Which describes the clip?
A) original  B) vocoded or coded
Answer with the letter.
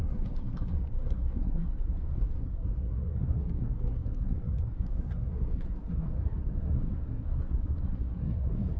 B